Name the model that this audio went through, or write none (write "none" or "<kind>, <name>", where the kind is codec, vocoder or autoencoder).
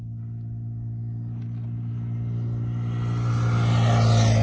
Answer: none